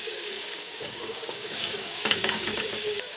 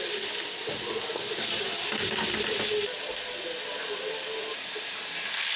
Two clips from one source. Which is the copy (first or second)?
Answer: first